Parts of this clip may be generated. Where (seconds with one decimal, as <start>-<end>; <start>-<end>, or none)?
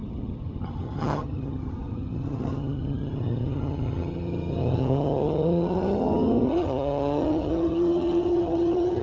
0.0-9.0